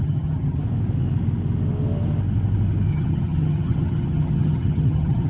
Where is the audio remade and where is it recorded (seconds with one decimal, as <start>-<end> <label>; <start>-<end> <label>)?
0.0-0.6 remade; 0.6-2.9 recorded; 2.9-5.3 remade